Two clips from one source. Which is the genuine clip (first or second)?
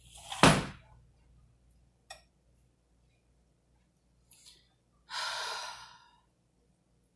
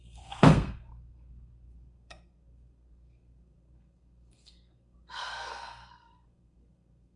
first